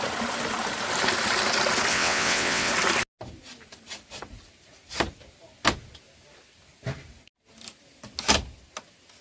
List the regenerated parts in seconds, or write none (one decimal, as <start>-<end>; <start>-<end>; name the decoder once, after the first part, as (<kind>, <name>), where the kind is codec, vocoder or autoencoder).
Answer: 1.9-2.7 (vocoder, WaveNeXt)